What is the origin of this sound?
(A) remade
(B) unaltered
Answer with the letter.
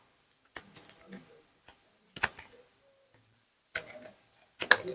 B